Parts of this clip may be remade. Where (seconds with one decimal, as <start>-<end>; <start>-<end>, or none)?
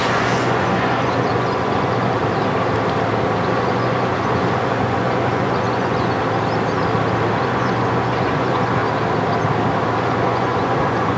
0.0-2.2; 3.4-6.2; 7.4-8.8; 10.0-11.2